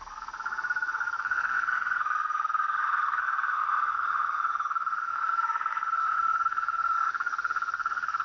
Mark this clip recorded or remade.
remade